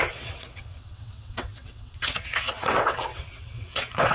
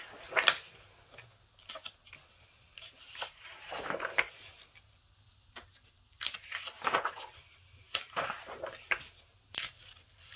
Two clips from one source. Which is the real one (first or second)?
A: second